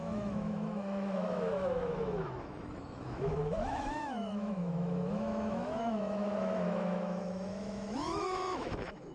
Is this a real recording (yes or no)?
no